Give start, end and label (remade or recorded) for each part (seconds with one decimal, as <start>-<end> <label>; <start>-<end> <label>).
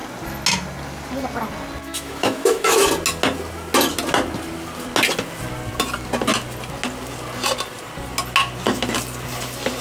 0.0-1.8 recorded; 1.8-2.9 remade; 2.9-9.8 recorded